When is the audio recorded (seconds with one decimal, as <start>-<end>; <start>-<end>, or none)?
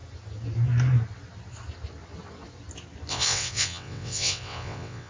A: 0.0-3.1